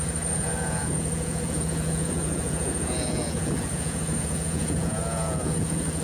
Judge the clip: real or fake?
fake